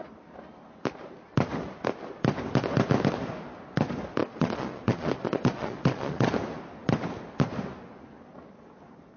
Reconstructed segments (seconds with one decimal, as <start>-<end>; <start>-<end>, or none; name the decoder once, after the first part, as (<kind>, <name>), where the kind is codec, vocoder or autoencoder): 4.2-6.3 (vocoder, Vocos)